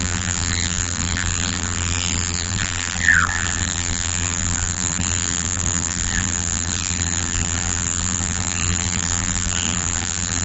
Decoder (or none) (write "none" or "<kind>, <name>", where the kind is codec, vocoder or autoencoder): vocoder, BigVGAN v2